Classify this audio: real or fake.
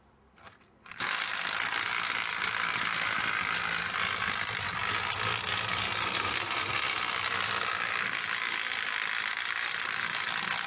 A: real